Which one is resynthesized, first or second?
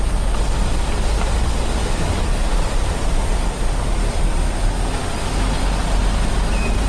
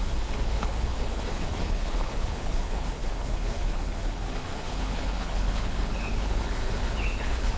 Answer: second